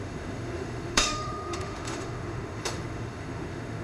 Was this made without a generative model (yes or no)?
no